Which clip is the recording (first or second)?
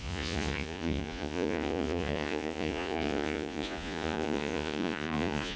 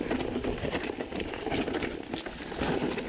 second